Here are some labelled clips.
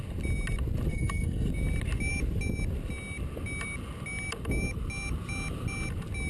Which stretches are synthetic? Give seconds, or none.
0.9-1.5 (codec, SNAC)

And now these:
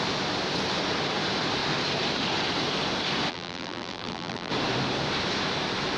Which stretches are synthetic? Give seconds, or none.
3.3-4.5 (vocoder, BigVGAN v2)

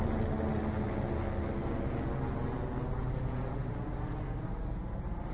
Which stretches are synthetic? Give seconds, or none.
none

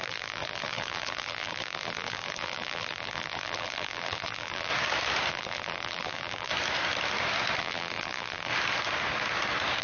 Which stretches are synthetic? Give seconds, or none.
0.0-4.7 (vocoder, BigVGAN v2); 5.3-6.5; 7.6-8.5

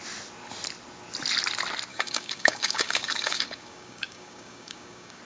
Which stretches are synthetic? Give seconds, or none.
1.9-5.2 (codec, DAC)

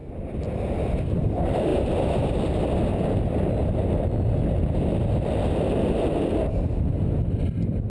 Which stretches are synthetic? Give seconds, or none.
1.2-2.9 (vocoder, BigVGAN v2); 7.5-7.9

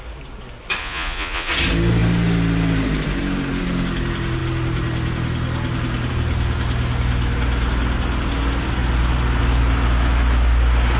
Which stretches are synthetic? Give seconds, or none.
0.8-1.5 (vocoder, Vocos)